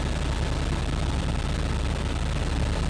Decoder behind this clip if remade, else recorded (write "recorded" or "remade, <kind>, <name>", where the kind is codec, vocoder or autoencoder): recorded